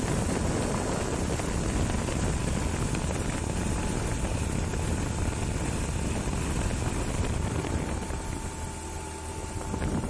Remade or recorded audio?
recorded